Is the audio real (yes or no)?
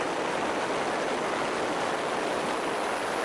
yes